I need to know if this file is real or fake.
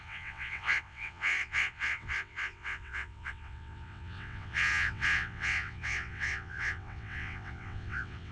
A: fake